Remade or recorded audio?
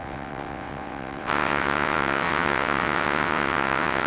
remade